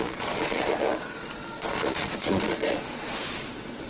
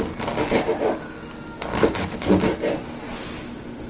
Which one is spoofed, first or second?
first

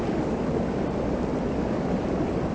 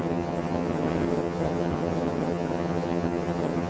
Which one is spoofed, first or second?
second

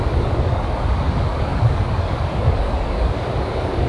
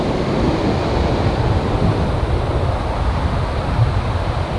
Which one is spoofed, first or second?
first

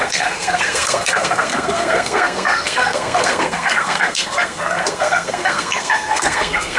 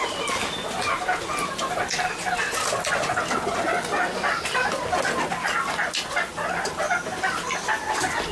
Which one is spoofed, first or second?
first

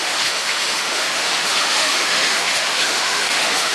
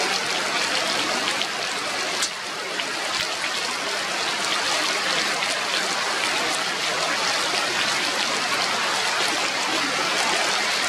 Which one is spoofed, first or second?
first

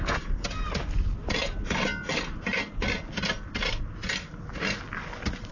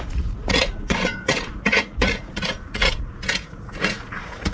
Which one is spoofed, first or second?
second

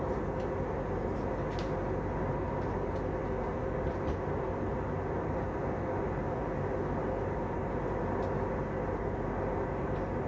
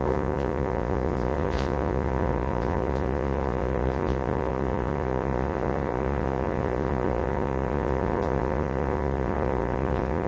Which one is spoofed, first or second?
second